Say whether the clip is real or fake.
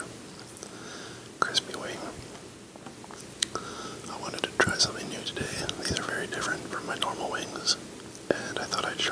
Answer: real